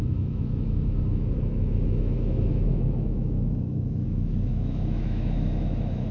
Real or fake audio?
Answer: fake